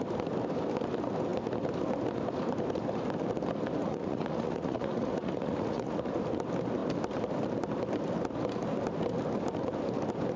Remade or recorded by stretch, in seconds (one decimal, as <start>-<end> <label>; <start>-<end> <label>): 0.0-3.8 recorded; 3.8-6.1 remade; 6.1-10.4 recorded